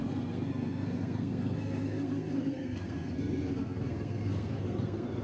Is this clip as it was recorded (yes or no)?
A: no